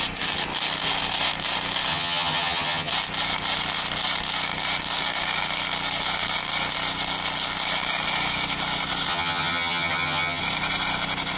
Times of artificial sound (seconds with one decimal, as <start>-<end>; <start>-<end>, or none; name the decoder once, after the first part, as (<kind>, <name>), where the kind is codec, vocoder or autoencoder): 1.9-2.9 (vocoder, HiFi-GAN); 9.1-10.4